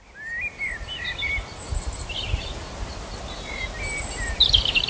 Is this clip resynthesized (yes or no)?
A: no